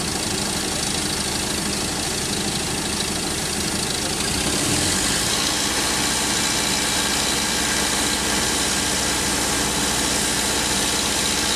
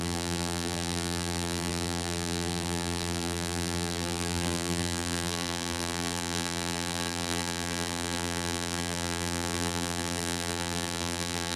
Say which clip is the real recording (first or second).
first